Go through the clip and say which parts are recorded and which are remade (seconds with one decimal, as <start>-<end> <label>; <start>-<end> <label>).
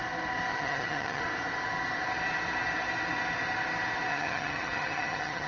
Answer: 0.0-0.5 recorded; 0.5-1.2 remade; 1.2-4.1 recorded; 4.1-5.5 remade